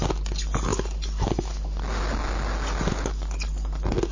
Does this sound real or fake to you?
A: real